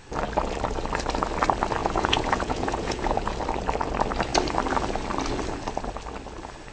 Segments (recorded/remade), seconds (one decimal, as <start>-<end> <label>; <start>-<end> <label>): 0.0-1.8 recorded; 1.8-3.4 remade; 3.4-6.7 recorded

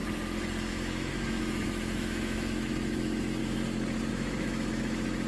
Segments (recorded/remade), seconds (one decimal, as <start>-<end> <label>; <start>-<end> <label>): 0.0-0.7 recorded; 0.7-3.4 remade; 3.4-4.1 recorded; 4.1-5.3 remade

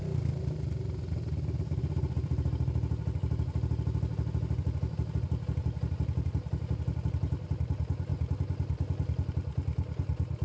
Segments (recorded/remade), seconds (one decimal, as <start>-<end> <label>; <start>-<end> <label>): 0.0-10.4 recorded

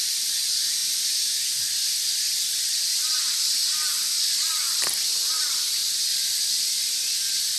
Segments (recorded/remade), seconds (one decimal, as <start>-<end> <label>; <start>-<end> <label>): 0.0-5.8 recorded; 5.8-6.4 remade; 6.4-7.6 recorded

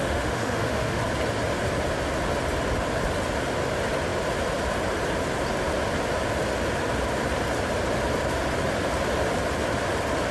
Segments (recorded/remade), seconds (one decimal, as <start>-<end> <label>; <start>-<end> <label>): 0.0-1.0 remade; 1.0-10.3 recorded